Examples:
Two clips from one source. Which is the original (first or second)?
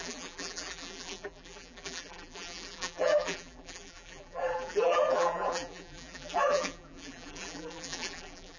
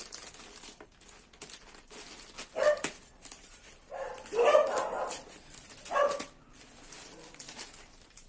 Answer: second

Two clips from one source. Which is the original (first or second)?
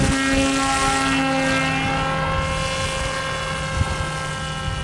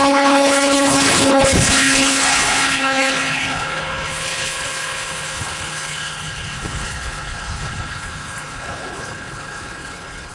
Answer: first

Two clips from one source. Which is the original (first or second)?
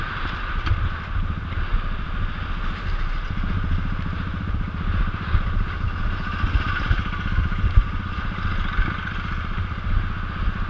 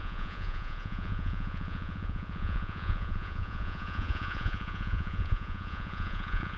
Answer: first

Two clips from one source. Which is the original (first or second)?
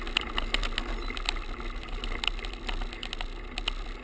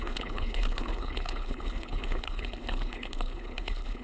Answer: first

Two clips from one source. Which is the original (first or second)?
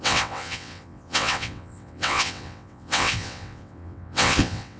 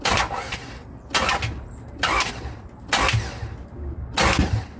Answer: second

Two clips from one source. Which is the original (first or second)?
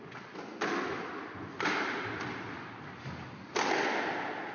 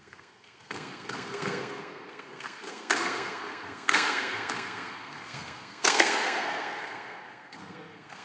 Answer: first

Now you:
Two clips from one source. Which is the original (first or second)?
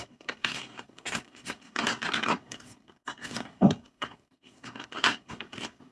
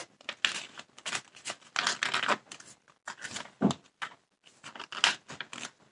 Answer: second